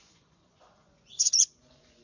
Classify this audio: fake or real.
fake